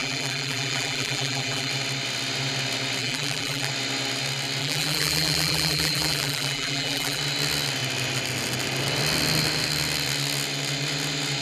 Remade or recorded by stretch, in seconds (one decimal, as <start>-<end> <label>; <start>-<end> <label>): 0.0-1.7 remade; 1.7-3.0 recorded; 3.0-3.7 remade; 3.7-4.6 recorded; 4.6-7.2 remade; 7.2-11.4 recorded